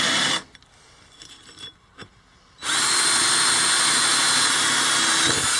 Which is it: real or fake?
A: real